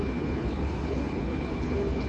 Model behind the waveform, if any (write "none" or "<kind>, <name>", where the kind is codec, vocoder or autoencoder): codec, HILCodec